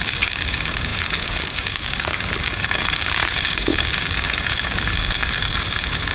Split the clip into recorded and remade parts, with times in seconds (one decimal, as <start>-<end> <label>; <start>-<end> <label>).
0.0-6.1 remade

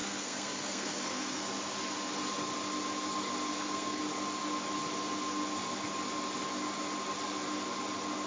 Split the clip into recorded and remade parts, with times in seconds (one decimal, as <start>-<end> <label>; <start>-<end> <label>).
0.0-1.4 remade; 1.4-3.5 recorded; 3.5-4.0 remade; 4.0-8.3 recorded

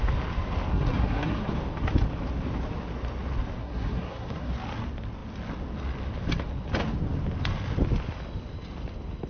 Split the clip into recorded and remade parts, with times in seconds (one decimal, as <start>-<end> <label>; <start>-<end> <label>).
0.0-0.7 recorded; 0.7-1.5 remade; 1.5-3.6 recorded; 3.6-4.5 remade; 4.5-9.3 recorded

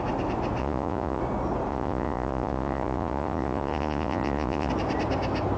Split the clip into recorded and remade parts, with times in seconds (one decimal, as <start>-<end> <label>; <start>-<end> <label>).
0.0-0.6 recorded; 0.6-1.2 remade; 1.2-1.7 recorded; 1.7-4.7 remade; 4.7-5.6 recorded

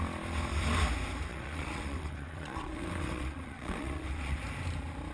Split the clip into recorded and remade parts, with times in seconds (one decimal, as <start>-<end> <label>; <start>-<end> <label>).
0.0-1.3 recorded; 1.3-4.4 remade; 4.4-5.1 recorded